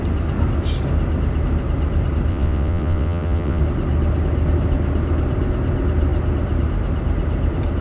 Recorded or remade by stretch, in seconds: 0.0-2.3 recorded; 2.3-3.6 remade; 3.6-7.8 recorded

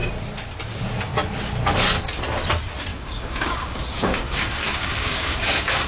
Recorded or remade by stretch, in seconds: 0.0-2.9 recorded; 2.9-5.9 remade

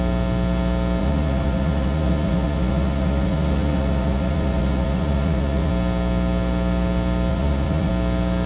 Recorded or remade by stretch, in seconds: 0.0-1.0 recorded; 1.0-5.7 remade; 5.7-7.3 recorded; 7.3-7.9 remade; 7.9-8.5 recorded